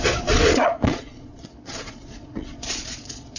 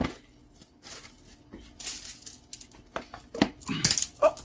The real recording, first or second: second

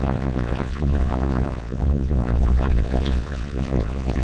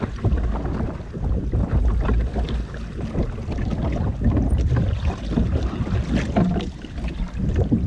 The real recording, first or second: second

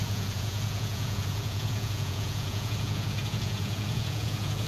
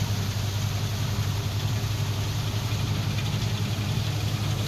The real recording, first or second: second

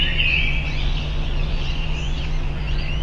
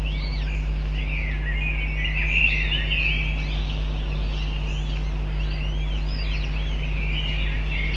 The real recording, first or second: second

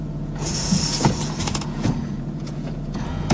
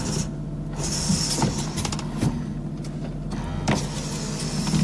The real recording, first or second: second